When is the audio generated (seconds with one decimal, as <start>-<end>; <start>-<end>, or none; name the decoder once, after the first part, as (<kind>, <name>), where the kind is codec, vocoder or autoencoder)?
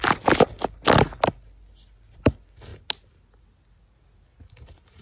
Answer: none